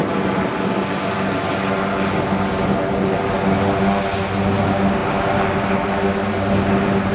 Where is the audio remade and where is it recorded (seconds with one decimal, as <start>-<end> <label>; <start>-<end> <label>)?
0.0-7.1 recorded